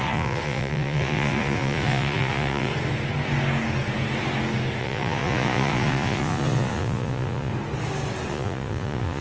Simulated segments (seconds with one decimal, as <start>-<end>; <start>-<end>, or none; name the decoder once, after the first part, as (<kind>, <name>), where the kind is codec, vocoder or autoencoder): 0.0-2.7 (vocoder, Vocos); 4.8-7.5; 8.3-9.2